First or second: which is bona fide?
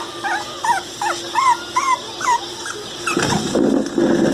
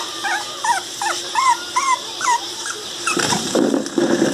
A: first